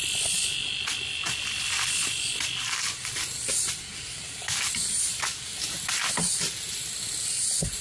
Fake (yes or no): no